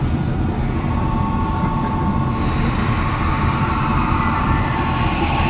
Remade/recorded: recorded